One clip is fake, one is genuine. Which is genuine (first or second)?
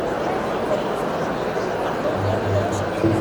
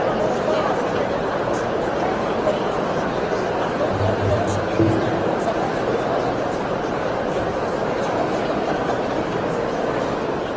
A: first